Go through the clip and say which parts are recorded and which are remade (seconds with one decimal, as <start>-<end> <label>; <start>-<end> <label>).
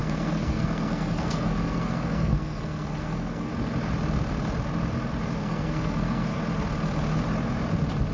0.0-3.5 remade; 3.5-5.4 recorded; 5.4-6.4 remade; 6.4-8.1 recorded